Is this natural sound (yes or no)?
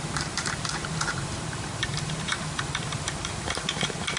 no